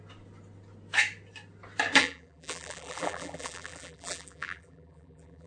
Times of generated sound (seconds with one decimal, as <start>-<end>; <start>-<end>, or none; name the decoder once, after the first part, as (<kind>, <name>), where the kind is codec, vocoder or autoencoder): 2.0-5.5 (vocoder, BigVGAN v2)